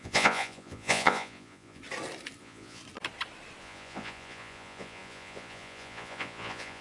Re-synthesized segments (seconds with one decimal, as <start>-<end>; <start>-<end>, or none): 0.0-1.8; 2.4-2.8; 3.6-6.8